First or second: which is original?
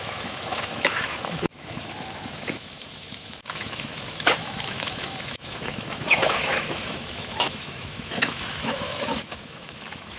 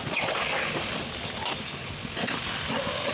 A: second